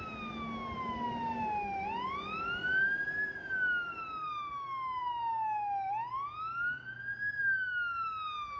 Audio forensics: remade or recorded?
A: recorded